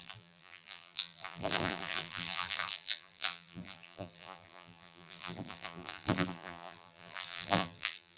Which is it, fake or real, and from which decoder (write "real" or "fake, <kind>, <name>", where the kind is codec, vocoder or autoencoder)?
fake, vocoder, BigVGAN v2